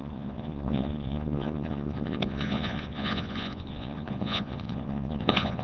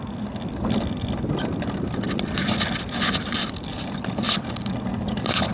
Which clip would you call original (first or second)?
second